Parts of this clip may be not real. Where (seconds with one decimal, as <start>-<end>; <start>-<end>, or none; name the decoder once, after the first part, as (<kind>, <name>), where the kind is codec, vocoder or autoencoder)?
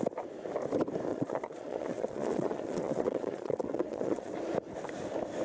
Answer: 1.1-4.3 (vocoder, Vocos)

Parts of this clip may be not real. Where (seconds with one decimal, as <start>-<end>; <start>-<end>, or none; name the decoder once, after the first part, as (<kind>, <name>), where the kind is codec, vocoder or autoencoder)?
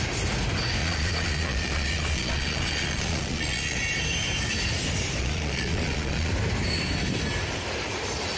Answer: 0.8-3.8 (vocoder, Vocos); 5.2-6.3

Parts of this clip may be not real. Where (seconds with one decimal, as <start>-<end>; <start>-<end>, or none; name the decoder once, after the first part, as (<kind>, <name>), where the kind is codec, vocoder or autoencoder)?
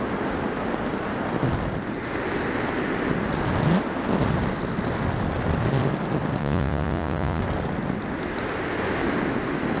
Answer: 6.4-7.4 (vocoder, Vocos)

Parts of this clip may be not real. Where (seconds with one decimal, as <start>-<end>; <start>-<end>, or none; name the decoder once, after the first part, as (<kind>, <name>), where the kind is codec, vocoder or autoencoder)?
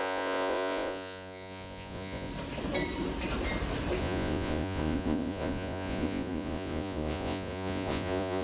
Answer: 0.0-2.3 (vocoder, Vocos); 4.0-8.4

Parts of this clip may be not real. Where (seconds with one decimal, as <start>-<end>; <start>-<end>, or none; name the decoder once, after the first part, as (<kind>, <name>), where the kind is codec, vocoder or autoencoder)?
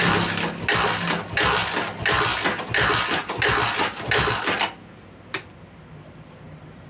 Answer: none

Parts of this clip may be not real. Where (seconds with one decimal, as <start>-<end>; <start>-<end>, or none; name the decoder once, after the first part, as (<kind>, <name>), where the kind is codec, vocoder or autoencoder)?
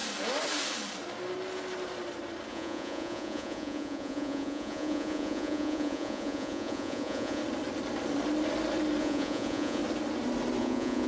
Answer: 2.5-7.4 (vocoder, Vocos); 9.0-9.8; 10.6-11.1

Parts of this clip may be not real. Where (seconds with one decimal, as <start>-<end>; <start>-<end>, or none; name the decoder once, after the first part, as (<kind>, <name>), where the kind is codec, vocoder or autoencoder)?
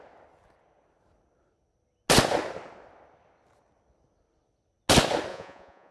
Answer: 5.3-5.9 (vocoder, Vocos)